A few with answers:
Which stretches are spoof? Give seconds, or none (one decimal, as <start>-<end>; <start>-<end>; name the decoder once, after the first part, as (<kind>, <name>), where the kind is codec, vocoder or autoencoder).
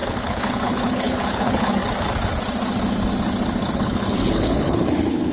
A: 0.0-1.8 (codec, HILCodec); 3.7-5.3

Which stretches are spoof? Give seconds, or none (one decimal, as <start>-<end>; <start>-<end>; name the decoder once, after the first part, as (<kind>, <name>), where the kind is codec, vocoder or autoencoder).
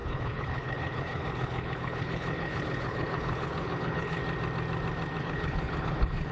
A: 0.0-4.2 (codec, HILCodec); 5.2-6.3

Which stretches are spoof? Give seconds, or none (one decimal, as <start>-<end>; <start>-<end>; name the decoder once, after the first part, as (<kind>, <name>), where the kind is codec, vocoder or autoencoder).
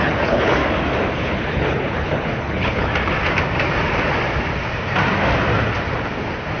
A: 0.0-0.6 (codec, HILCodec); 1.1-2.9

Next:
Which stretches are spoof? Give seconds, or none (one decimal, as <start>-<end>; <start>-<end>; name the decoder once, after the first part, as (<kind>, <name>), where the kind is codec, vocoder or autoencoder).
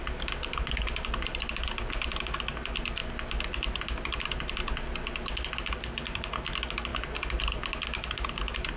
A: none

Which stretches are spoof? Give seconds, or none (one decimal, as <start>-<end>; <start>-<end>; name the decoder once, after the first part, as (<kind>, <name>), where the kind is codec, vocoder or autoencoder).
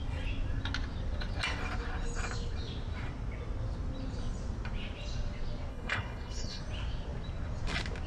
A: 5.7-6.6 (codec, HILCodec)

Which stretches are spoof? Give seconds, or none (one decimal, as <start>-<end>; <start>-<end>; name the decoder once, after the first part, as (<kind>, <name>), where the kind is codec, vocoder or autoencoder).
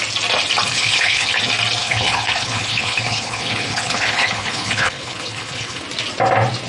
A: 0.7-1.4 (codec, HILCodec); 1.8-5.8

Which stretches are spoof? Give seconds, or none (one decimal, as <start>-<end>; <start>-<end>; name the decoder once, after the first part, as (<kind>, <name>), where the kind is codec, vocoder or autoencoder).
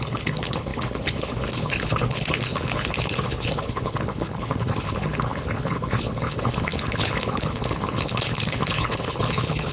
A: 0.0-9.7 (codec, HILCodec)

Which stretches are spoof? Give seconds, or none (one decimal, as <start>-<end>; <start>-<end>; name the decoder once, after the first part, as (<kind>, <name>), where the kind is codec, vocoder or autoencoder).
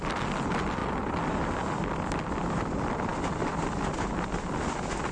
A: none